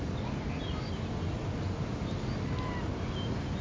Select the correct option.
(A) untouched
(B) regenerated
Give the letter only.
A